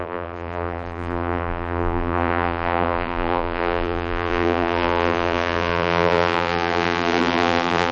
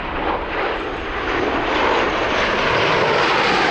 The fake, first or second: first